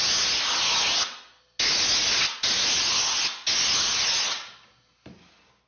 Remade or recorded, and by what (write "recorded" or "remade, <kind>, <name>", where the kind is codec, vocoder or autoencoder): recorded